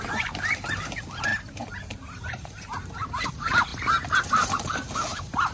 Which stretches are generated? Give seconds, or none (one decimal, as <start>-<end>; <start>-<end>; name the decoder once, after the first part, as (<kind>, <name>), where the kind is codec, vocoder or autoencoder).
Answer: 0.0-5.5 (vocoder, BigVGAN v2)